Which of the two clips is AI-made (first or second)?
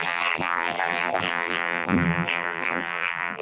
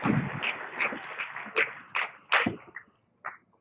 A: first